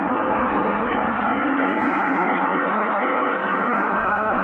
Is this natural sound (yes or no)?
no